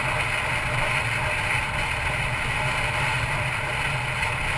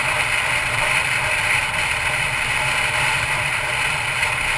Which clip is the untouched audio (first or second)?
first